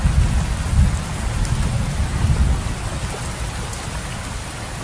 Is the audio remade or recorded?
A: recorded